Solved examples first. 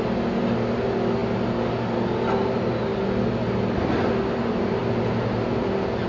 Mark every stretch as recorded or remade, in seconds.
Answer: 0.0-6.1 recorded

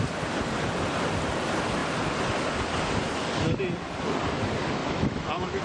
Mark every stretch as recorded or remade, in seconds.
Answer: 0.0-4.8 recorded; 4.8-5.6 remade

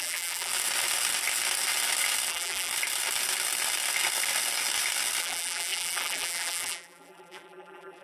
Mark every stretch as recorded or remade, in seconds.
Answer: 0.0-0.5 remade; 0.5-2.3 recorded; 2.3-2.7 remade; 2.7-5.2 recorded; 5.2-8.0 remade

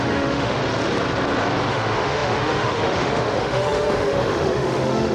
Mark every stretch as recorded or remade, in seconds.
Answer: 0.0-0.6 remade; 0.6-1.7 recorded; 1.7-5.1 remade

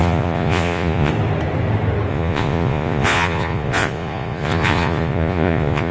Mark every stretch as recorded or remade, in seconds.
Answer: 0.0-1.1 remade; 1.1-2.1 recorded; 2.1-5.9 remade

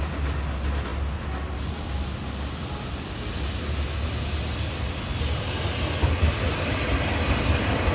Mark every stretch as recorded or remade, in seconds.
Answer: 0.0-7.9 recorded

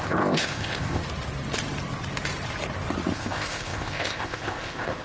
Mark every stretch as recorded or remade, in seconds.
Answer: 0.0-1.0 remade; 1.0-3.1 recorded; 3.1-5.0 remade

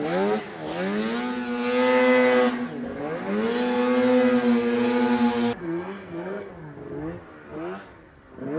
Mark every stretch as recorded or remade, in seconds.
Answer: 0.0-5.6 recorded; 5.6-6.5 remade; 6.5-8.6 recorded